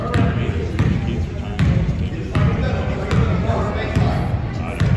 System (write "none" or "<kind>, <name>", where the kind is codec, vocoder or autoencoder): none